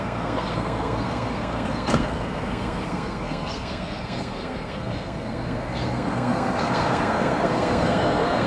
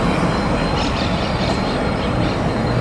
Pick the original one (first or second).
second